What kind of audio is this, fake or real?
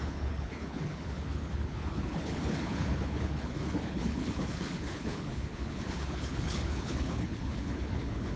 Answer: fake